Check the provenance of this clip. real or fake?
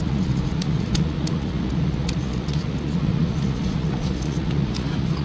fake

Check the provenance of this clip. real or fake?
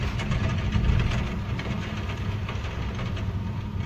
real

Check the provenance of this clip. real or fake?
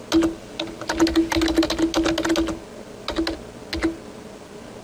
real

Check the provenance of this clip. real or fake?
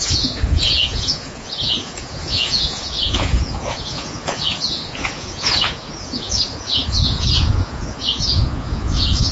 fake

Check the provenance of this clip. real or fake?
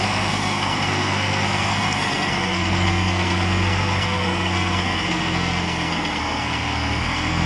fake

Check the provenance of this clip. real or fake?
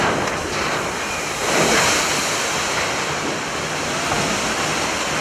real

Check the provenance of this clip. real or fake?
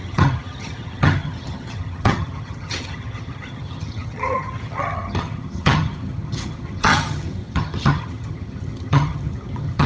fake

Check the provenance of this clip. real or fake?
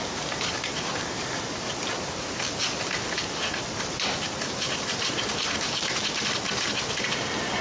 real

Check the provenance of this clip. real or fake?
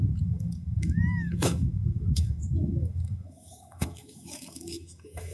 fake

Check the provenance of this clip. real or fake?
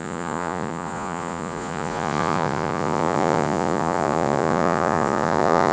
fake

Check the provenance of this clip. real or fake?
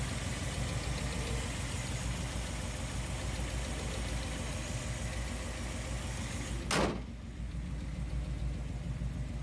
real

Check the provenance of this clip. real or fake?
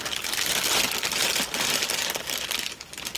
real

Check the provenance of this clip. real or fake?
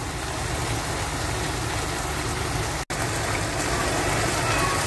real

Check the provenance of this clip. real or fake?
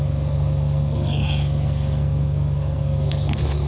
fake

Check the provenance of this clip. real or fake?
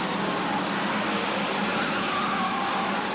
real